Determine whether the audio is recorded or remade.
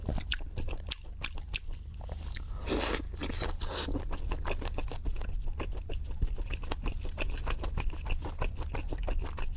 recorded